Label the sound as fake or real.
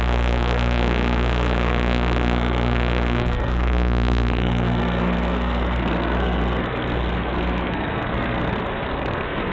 fake